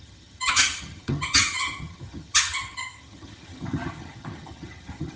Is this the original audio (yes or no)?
no